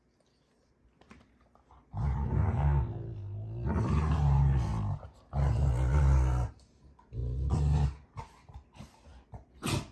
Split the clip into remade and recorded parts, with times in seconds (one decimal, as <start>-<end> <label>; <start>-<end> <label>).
0.0-9.1 recorded; 9.1-9.9 remade